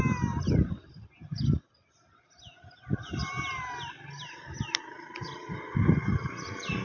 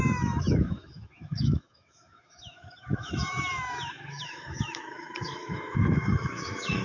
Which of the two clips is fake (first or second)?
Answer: second